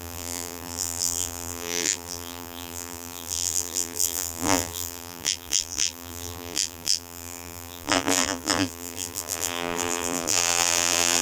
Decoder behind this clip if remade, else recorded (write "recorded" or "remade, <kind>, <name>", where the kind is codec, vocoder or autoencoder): remade, vocoder, BigVGAN v2